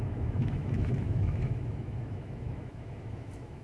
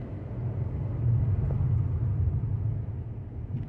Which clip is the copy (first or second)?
first